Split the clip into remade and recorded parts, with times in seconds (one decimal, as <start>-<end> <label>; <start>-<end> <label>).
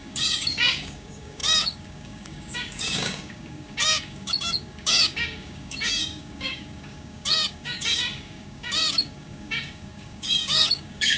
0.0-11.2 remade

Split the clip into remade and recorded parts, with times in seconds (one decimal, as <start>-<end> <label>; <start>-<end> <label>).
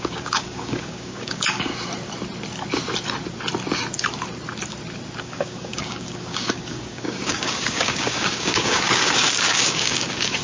0.0-1.7 remade; 1.7-5.2 recorded; 5.2-10.4 remade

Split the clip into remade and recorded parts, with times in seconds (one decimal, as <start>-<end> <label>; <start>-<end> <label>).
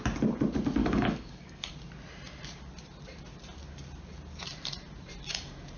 0.0-0.8 recorded; 0.8-1.7 remade; 1.7-5.8 recorded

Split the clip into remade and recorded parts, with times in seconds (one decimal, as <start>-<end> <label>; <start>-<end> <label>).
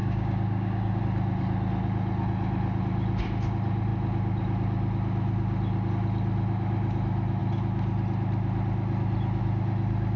0.0-1.0 remade; 1.0-10.2 recorded